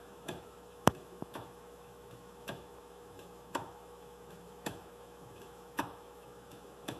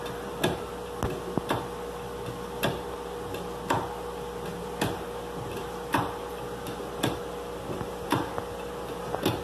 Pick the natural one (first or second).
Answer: second